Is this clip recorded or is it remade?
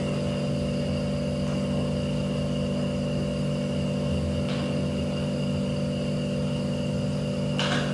recorded